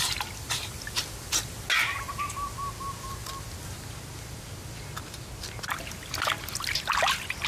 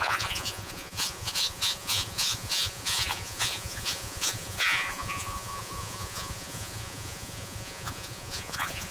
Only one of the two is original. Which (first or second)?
first